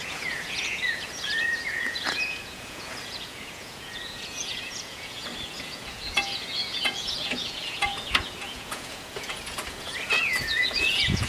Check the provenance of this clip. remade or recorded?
remade